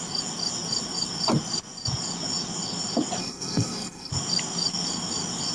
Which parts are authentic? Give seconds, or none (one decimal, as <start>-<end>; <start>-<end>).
0.0-3.2; 4.1-5.5